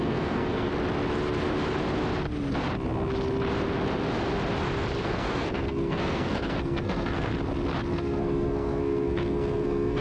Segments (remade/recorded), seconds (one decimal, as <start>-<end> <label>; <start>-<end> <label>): 0.0-0.7 remade; 0.7-5.0 recorded; 5.0-7.3 remade; 7.3-7.9 recorded; 7.9-10.0 remade